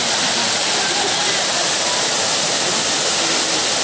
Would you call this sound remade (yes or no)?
no